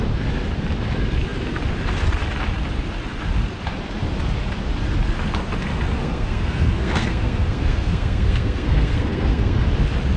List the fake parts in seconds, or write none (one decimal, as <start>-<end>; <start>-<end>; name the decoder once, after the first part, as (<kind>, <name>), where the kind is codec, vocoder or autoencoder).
6.0-9.6 (codec, SNAC)

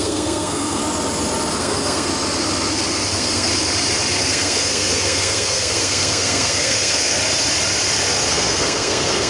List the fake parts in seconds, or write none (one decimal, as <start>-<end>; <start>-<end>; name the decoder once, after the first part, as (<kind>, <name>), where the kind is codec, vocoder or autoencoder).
0.0-0.8 (codec, SNAC); 1.6-2.1; 3.1-3.5; 4.2-7.2; 8.3-9.3